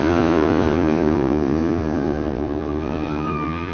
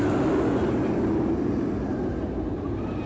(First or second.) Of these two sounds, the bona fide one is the second